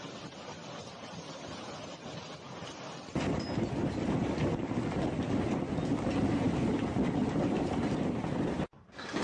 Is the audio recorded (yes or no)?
yes